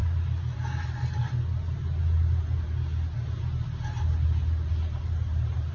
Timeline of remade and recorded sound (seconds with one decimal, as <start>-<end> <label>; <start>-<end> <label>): 0.0-5.7 recorded